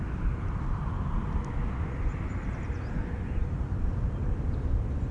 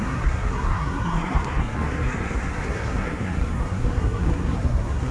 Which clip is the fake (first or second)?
second